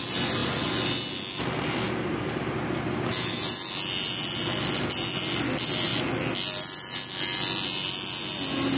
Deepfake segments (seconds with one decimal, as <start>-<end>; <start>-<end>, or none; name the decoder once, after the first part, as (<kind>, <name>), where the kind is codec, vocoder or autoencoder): none